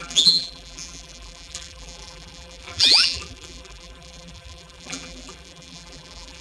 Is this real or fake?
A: fake